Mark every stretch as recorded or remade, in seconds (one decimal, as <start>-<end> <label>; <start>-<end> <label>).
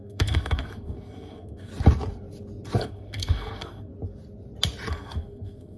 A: 0.0-1.7 remade; 1.7-2.8 recorded; 2.8-3.9 remade; 3.9-4.9 recorded; 4.9-5.8 remade